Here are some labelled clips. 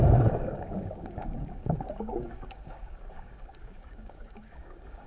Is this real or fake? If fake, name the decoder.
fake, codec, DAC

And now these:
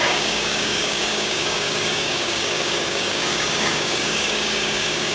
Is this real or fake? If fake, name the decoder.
fake, codec, DAC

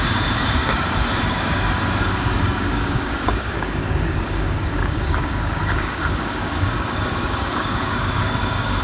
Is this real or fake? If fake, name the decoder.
fake, codec, DAC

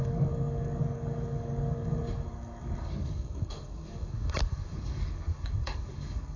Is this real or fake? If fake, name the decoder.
fake, codec, DAC